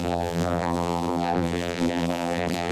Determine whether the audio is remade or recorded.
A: remade